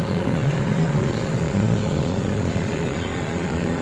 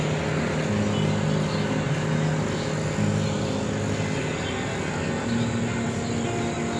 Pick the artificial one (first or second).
first